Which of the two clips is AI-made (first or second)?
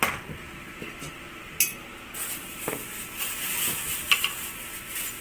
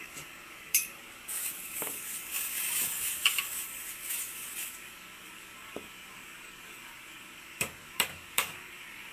second